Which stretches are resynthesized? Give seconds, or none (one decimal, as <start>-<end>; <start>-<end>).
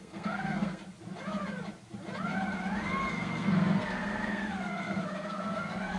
0.0-0.8; 3.1-6.0